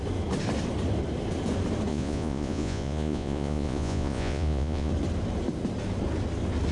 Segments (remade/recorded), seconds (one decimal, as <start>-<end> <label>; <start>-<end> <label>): 0.0-1.9 recorded; 1.9-4.9 remade; 4.9-6.7 recorded